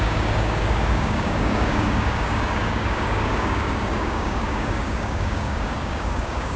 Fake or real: fake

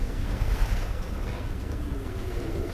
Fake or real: fake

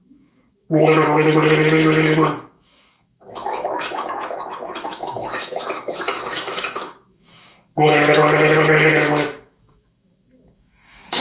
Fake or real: fake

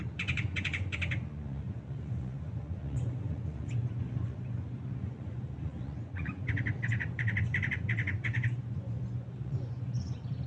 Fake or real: fake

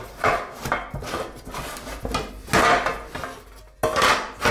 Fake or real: real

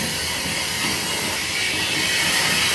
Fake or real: real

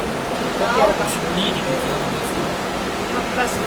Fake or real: real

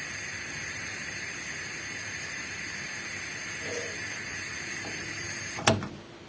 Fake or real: real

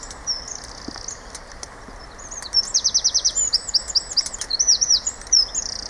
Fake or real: real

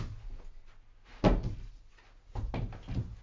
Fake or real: real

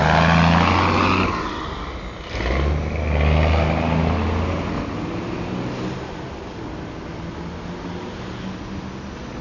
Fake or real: real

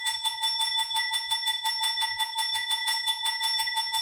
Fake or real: fake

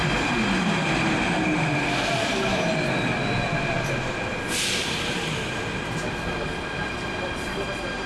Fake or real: real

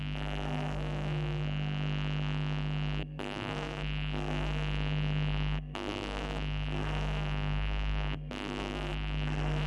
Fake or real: fake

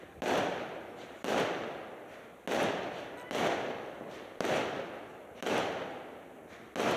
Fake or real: real